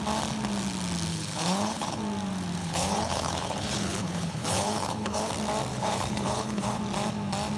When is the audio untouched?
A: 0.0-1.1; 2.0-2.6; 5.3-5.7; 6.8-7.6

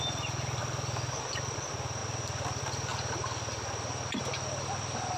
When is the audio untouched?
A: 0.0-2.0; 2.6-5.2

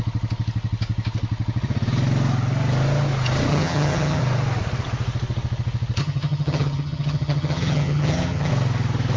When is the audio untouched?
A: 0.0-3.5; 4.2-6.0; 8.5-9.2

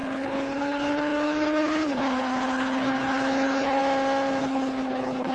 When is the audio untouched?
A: 3.8-4.4